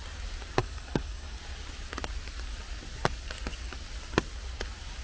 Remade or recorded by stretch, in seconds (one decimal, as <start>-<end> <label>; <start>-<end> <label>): 0.0-0.6 recorded; 0.6-1.4 remade; 1.4-5.0 recorded